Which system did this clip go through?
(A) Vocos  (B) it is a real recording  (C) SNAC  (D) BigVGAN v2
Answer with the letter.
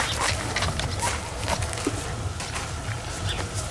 B